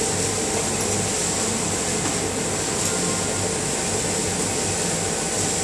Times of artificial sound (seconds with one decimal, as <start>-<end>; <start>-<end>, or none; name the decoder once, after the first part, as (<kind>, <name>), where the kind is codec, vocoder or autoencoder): none